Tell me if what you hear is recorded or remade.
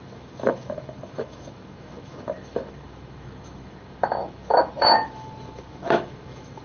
remade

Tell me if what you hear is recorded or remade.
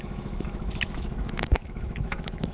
remade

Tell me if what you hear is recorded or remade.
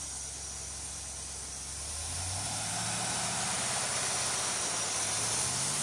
recorded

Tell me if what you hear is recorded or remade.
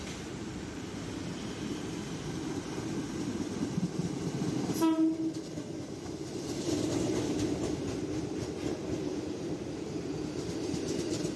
recorded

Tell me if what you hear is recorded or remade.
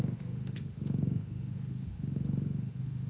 remade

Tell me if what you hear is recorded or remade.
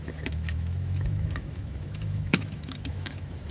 remade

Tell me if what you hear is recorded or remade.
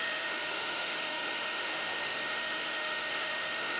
remade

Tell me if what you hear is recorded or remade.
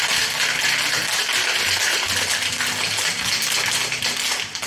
recorded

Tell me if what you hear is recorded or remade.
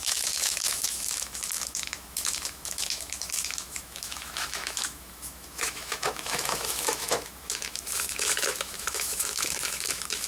remade